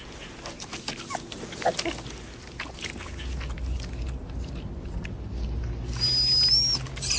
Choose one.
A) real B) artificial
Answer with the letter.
A